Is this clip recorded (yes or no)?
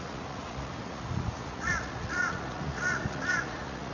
no